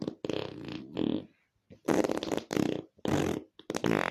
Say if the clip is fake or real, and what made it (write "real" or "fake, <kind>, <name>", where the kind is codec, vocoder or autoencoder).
real